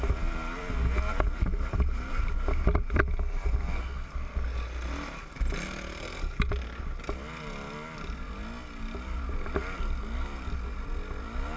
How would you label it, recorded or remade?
recorded